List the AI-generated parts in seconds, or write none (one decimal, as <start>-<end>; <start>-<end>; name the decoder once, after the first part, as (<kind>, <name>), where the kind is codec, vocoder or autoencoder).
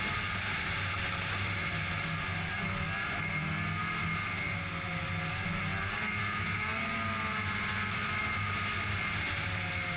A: none